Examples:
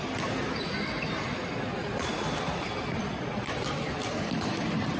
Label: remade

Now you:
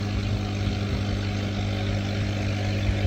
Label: recorded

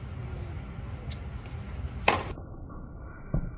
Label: recorded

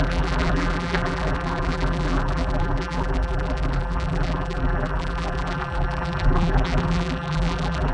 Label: remade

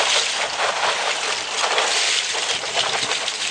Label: remade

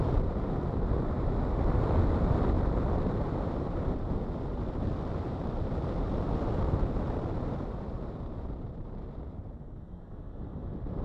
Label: remade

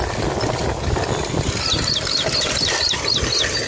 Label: recorded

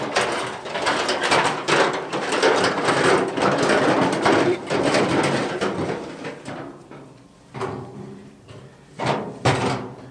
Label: remade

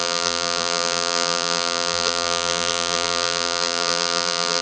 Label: remade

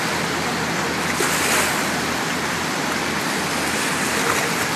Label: recorded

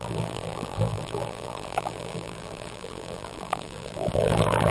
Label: remade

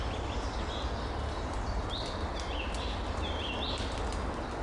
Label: recorded